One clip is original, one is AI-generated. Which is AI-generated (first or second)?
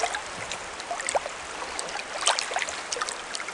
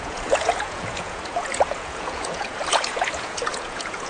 second